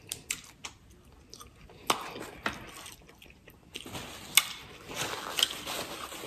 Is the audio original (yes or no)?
yes